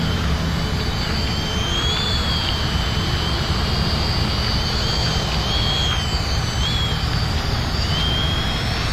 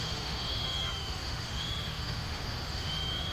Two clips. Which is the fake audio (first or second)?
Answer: second